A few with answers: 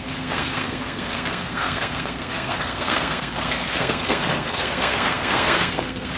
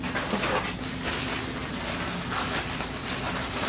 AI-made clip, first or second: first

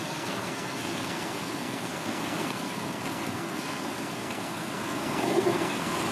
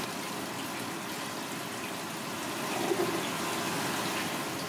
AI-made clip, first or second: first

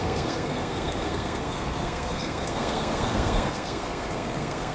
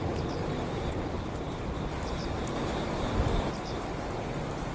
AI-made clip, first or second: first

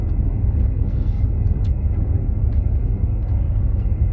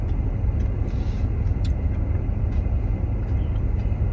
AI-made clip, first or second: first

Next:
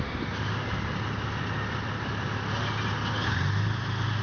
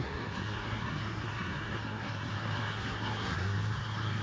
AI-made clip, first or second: second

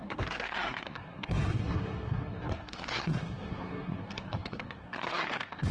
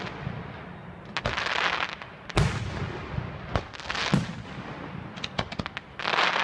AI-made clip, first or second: first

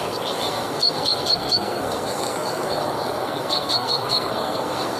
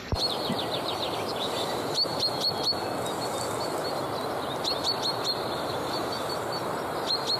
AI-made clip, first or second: first